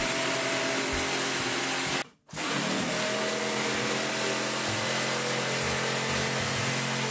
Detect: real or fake real